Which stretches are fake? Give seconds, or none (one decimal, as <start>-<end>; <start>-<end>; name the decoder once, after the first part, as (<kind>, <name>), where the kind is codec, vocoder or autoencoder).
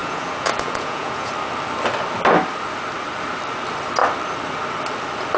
0.0-1.3 (vocoder, Vocos)